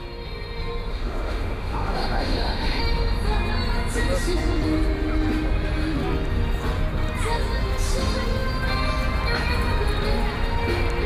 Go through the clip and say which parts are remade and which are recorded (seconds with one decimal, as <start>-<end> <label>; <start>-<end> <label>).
0.0-0.9 recorded; 0.9-2.8 remade; 2.8-11.1 recorded